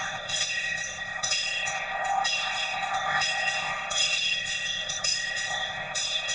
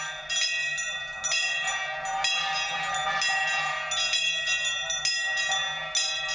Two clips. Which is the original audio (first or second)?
second